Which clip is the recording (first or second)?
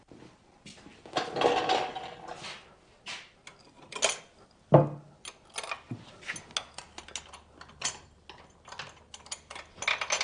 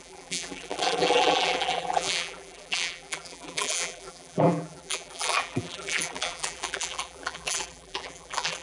first